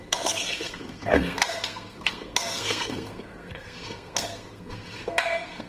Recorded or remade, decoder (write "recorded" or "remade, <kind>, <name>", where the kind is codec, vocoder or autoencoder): remade, codec, SNAC